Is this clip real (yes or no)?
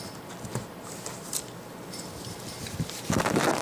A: yes